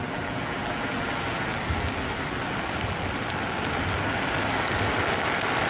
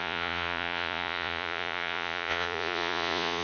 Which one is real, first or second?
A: first